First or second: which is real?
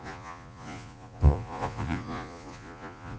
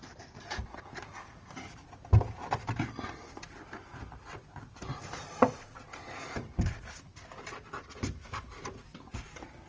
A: second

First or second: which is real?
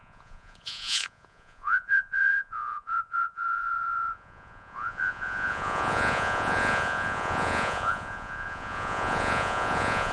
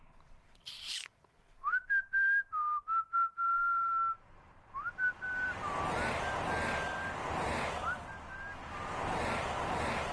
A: second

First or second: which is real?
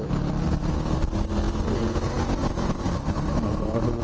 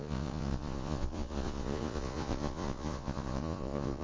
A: first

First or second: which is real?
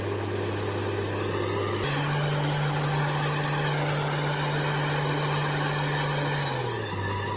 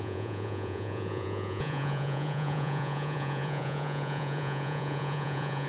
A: first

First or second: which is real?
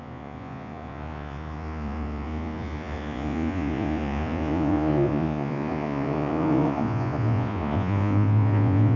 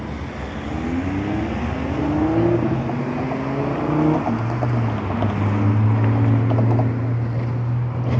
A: second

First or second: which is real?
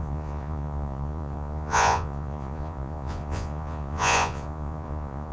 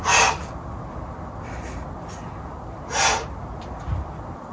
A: second